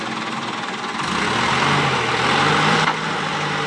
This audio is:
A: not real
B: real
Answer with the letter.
B